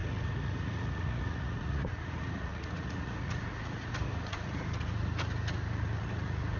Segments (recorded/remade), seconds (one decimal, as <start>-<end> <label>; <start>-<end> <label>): 0.0-6.6 remade